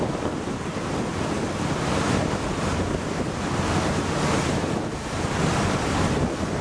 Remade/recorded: recorded